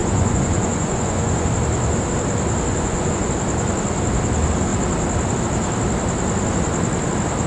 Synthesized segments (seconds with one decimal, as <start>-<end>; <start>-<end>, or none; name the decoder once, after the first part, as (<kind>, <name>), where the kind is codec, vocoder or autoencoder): 0.0-1.5 (vocoder, Vocos); 2.7-3.3